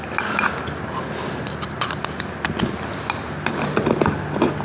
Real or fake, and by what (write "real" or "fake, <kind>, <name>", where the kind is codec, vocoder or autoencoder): real